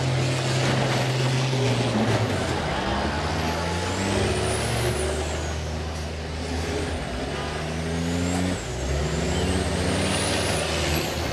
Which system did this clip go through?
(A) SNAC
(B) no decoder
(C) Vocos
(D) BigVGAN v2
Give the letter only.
B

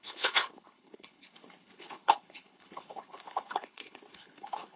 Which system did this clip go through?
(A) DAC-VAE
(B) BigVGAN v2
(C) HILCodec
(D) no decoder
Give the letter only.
C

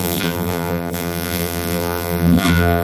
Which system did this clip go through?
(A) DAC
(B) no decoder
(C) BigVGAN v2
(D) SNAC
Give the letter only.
C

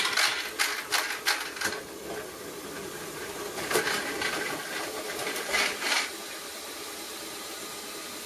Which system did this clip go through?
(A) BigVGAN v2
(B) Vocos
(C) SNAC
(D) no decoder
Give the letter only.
D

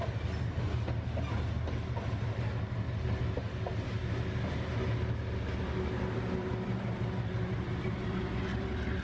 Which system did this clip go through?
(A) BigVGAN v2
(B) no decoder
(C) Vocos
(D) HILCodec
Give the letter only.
B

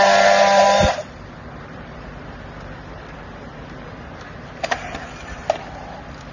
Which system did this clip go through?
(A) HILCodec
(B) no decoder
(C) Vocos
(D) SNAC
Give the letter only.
B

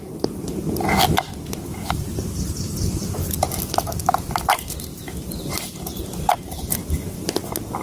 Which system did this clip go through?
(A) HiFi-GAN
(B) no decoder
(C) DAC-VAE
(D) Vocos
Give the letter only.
B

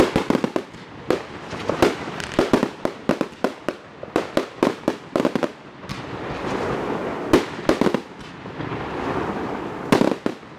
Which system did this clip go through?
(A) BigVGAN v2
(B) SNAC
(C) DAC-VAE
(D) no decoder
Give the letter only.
D